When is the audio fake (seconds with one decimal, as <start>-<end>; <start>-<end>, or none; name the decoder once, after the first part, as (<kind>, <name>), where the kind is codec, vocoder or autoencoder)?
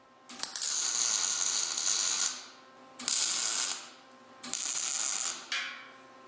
none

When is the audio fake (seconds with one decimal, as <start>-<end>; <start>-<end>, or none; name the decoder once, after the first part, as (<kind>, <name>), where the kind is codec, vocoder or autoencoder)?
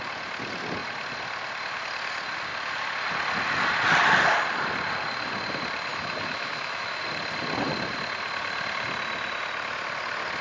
5.9-7.0 (autoencoder, DAC-VAE)